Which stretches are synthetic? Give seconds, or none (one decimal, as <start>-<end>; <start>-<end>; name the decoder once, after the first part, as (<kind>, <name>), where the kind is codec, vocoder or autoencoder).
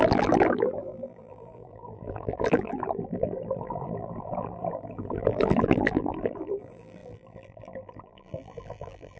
0.0-9.2 (vocoder, BigVGAN v2)